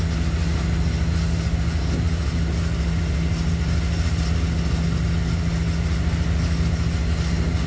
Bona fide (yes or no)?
yes